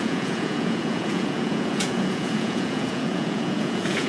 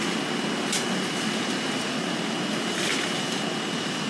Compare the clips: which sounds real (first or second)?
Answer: second